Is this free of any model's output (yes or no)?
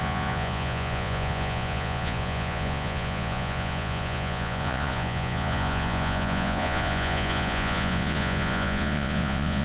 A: no